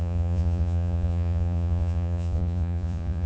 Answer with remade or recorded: remade